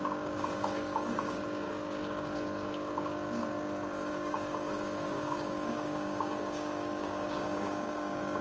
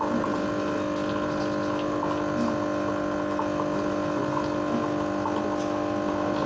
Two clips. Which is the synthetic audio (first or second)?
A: first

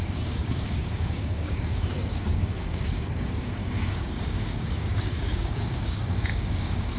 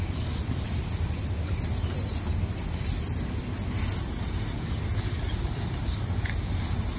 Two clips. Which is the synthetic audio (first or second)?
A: first